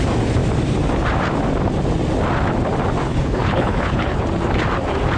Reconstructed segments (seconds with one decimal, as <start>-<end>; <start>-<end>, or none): 3.0-4.2